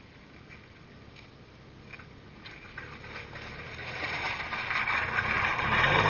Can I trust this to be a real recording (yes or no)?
yes